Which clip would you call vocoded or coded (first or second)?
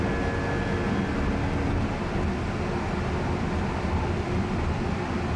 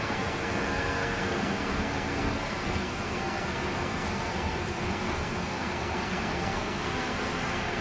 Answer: second